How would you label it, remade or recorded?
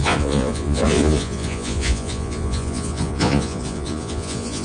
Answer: remade